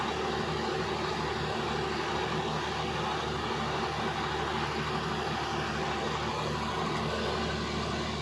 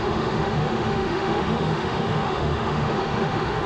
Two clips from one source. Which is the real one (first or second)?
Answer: first